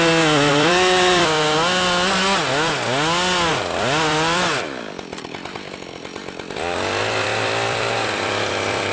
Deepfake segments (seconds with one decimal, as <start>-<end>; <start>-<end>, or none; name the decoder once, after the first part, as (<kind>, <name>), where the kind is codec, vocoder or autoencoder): 0.5-2.1 (vocoder, BigVGAN v2); 3.5-8.9